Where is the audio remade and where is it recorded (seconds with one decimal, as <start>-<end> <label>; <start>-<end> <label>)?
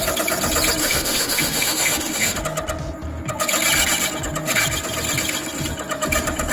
0.0-0.8 recorded; 0.8-2.4 remade; 2.4-6.5 recorded